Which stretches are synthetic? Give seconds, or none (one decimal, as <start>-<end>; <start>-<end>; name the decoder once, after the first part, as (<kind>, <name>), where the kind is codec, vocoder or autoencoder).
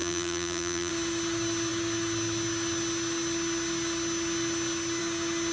0.0-0.9 (vocoder, BigVGAN v2)